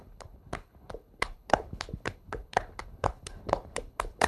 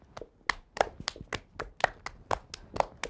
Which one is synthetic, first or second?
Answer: first